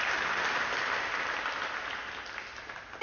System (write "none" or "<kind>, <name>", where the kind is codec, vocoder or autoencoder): none